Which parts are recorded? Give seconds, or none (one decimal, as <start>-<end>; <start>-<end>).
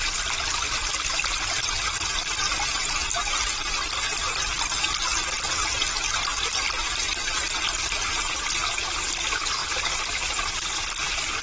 0.0-3.1; 3.7-9.6; 10.5-11.4